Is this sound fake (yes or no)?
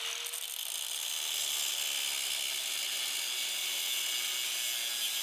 no